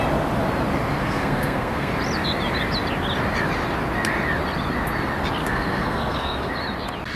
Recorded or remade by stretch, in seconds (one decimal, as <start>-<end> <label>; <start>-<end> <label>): 0.0-1.0 recorded; 1.0-1.9 remade; 1.9-5.4 recorded; 5.4-6.5 remade; 6.5-7.2 recorded